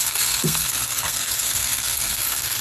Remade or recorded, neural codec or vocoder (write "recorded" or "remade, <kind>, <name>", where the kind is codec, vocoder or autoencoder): remade, codec, SNAC